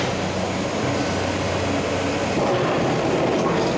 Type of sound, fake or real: real